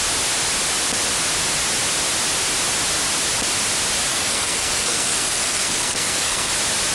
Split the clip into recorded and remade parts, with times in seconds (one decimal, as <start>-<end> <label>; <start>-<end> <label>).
0.0-4.1 recorded; 4.1-6.5 remade; 6.5-6.9 recorded